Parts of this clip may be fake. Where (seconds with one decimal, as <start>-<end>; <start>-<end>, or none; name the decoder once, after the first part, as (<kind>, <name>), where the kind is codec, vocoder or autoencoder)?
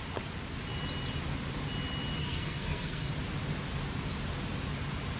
2.2-3.1 (codec, SNAC)